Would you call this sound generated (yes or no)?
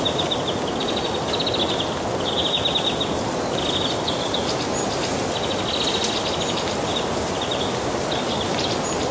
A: no